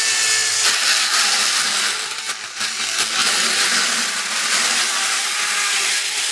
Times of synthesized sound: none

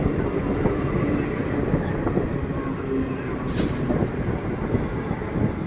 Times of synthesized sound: none

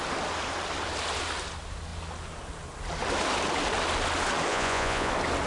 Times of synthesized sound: 4.5-5.1

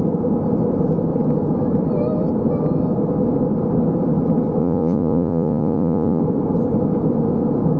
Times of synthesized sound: 4.6-6.2

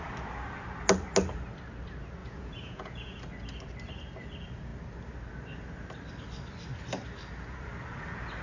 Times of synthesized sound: 2.2-3.2